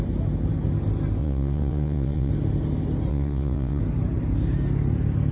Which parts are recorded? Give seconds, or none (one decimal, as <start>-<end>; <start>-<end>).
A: 0.0-1.2; 2.3-3.1; 3.8-5.3

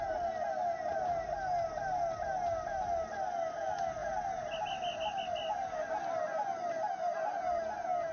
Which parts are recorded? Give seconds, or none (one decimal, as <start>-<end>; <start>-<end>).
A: 0.0-8.1

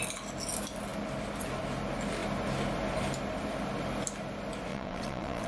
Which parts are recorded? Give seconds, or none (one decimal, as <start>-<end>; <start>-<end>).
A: 0.0-4.7

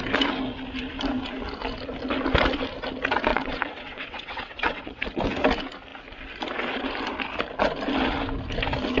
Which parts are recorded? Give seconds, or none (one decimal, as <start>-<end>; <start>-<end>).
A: 0.0-3.3; 5.0-9.0

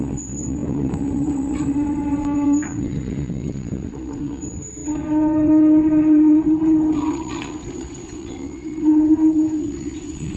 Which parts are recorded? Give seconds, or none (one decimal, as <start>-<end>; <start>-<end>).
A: none

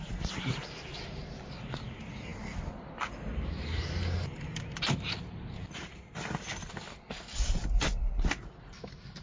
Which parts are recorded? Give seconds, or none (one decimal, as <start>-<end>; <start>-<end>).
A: 0.0-9.2

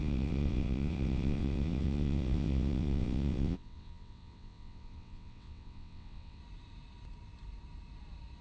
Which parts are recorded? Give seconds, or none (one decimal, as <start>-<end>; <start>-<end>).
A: 6.4-8.4